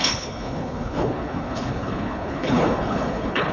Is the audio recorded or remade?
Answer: remade